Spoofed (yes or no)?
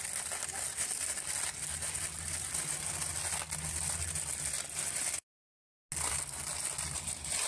no